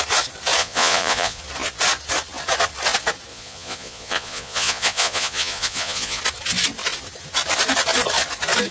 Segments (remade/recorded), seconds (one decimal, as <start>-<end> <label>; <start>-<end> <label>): 0.0-0.6 recorded; 0.6-1.4 remade; 1.4-3.3 recorded; 3.3-6.2 remade; 6.2-8.7 recorded